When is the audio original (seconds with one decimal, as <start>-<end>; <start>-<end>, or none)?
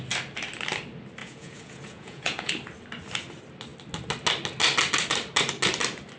0.0-1.2; 2.5-6.2